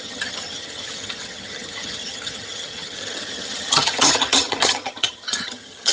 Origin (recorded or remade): remade